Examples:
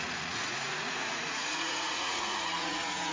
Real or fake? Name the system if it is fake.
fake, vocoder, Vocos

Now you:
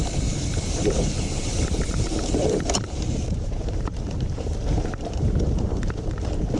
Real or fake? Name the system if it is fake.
fake, vocoder, BigVGAN v2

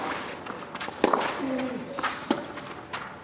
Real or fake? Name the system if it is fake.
real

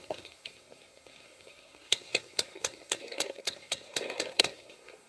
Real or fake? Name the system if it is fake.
fake, codec, SNAC